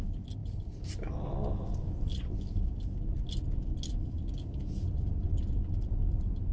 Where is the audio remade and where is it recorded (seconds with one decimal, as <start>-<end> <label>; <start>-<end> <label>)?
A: 0.0-6.5 recorded